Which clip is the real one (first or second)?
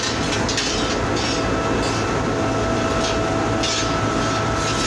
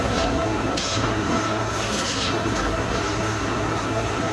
first